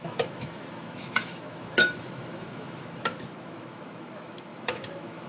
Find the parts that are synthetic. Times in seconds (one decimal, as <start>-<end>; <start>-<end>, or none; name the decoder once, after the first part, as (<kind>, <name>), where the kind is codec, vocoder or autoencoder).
0.0-5.3 (autoencoder, DAC-VAE)